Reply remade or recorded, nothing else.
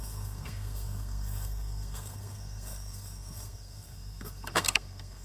remade